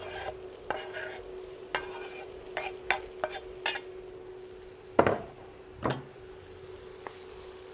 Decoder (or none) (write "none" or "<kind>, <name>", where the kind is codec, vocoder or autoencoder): none